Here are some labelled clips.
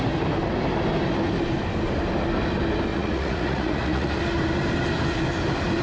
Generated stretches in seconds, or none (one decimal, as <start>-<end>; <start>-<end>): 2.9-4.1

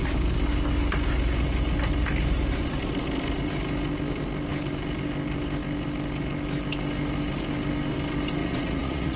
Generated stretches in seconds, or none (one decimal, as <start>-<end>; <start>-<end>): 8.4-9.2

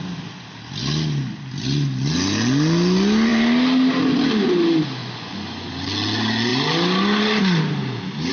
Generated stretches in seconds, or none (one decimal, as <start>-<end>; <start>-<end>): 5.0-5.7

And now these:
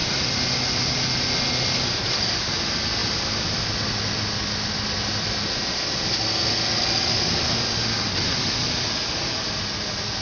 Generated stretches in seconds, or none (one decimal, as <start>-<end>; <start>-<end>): none

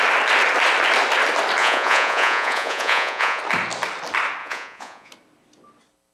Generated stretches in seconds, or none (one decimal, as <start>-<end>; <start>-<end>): 1.6-3.4; 4.4-5.1

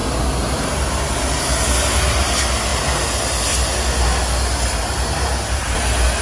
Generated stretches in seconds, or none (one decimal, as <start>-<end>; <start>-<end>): none

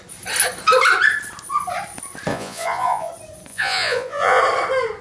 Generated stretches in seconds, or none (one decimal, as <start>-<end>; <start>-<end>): 2.3-3.1; 3.5-4.4